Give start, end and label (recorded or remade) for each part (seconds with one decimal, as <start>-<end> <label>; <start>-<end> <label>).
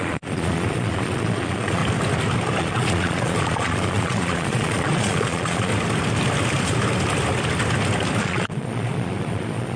0.0-1.8 remade; 1.8-2.6 recorded; 2.6-5.7 remade; 5.7-8.2 recorded; 8.2-9.8 remade